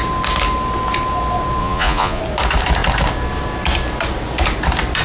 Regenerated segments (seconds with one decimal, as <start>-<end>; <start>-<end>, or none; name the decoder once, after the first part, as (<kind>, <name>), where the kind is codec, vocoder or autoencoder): 1.6-2.2 (vocoder, Vocos)